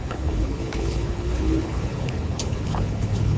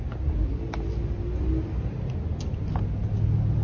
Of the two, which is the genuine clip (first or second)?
second